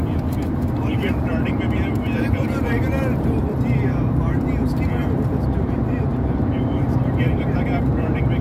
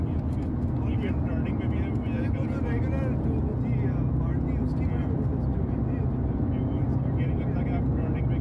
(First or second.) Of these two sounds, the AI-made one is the first